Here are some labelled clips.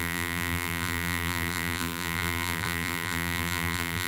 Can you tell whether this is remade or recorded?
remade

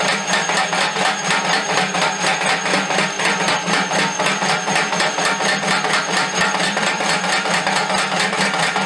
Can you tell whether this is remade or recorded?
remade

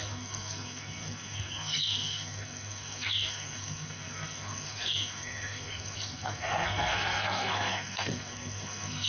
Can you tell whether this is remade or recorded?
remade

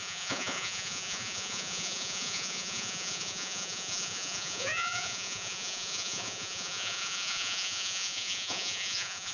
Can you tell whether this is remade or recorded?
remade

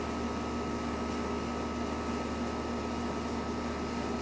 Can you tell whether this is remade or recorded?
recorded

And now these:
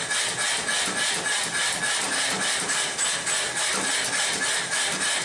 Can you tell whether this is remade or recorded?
recorded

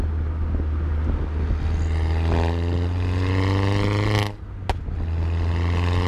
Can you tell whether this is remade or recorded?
recorded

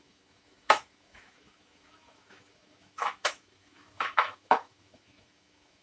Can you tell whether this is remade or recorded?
remade